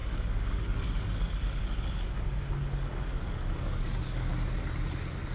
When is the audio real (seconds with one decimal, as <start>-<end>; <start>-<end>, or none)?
4.3-5.3